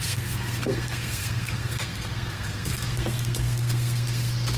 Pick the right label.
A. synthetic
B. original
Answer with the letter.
A